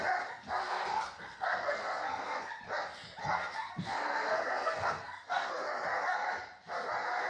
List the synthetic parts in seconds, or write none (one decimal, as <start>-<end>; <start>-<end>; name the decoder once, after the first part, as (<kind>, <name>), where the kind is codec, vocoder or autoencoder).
0.6-2.5 (codec, SNAC); 3.2-5.5